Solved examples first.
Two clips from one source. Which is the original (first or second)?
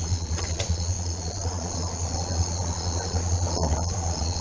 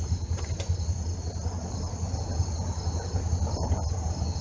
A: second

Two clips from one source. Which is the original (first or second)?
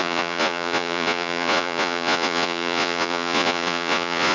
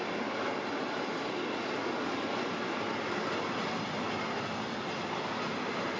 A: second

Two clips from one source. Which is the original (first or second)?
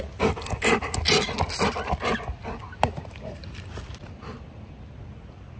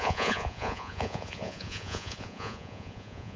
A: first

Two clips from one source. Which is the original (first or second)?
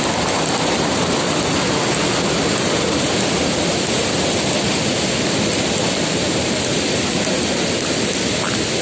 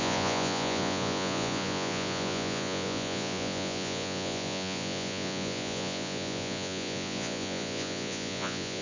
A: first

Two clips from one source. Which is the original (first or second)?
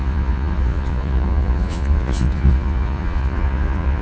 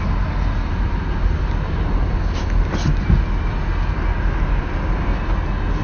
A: second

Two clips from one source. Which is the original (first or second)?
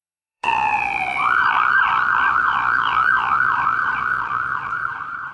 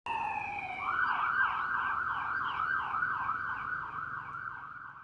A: second